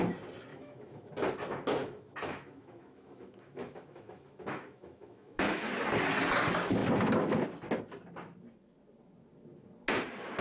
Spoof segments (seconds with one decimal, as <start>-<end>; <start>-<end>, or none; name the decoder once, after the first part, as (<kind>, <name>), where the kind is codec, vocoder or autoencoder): 0.5-1.1 (autoencoder, DAC-VAE); 1.8-5.7